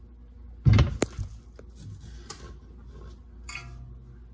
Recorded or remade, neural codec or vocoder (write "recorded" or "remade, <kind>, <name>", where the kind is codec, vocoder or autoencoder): recorded